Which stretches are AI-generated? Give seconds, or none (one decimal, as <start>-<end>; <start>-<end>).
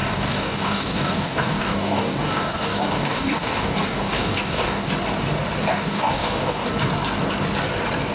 0.0-4.9; 5.7-6.7